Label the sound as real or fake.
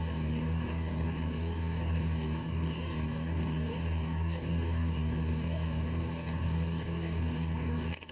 fake